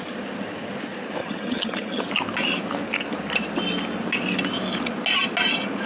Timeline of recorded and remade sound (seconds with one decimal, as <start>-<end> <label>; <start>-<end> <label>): 0.0-1.2 recorded; 1.2-2.0 remade; 2.0-5.9 recorded